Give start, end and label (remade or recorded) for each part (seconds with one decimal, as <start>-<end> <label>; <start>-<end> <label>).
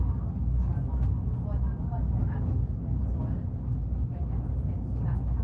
0.0-2.2 recorded; 2.2-3.0 remade; 3.0-3.5 recorded; 3.5-4.4 remade; 4.4-5.4 recorded